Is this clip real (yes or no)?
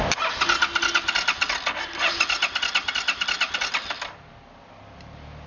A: yes